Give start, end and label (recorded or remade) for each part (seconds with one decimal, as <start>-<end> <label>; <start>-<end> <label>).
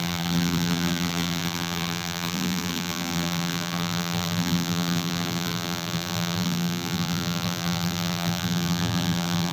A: 0.0-9.5 remade